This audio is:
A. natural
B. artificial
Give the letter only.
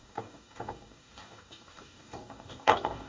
B